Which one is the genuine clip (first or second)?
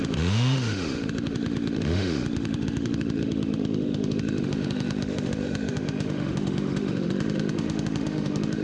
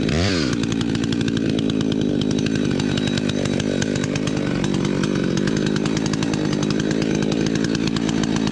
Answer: second